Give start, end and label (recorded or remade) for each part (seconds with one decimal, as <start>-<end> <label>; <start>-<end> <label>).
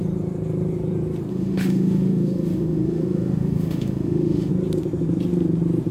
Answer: 0.0-1.3 recorded; 1.3-4.5 remade; 4.5-5.9 recorded